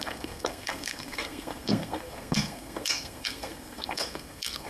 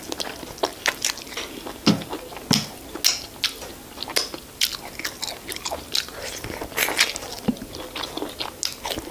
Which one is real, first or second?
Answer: second